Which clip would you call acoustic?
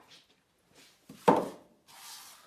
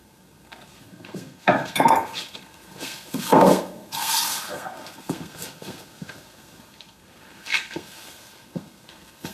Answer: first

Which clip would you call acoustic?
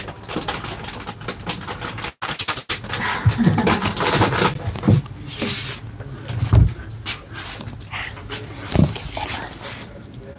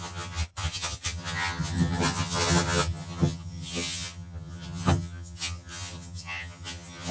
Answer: first